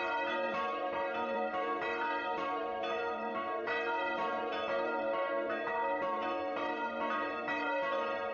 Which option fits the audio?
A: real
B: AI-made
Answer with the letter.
B